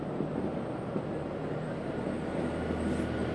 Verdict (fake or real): real